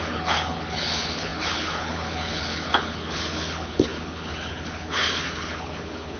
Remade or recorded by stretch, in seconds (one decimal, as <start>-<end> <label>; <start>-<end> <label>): 0.0-6.2 remade